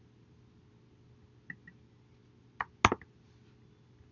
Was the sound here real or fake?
real